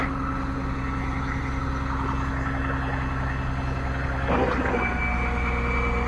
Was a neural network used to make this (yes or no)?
no